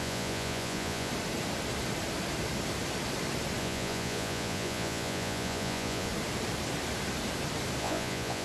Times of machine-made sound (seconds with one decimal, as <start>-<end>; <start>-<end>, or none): 0.0-1.1; 3.6-6.1; 7.8-8.4

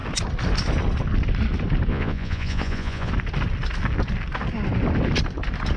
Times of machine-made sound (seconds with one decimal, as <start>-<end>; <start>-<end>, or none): 1.9-3.1

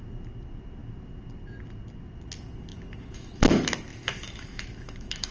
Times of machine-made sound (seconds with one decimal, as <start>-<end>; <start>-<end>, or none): 2.7-3.3; 3.9-5.3

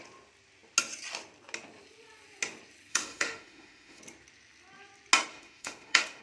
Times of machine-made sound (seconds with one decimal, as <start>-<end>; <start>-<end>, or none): 2.9-4.0; 5.3-6.2